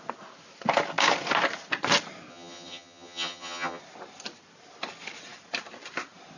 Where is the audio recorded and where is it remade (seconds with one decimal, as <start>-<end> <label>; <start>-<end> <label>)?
0.0-2.3 recorded; 2.3-3.8 remade; 3.8-6.4 recorded